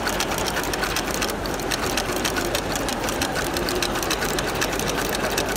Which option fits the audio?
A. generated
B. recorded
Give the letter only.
A